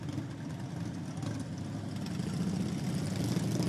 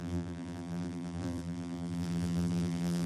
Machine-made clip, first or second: second